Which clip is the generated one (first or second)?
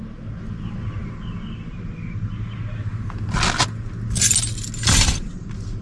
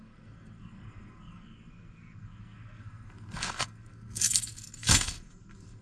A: second